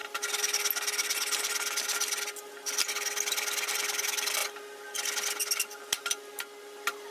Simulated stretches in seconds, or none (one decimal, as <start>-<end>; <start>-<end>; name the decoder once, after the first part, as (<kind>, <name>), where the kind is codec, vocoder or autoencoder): none